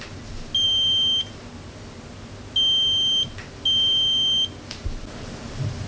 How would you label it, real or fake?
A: real